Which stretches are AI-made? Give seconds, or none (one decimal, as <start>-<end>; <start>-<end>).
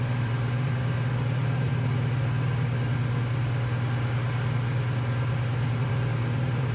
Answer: 0.0-1.7; 5.7-6.7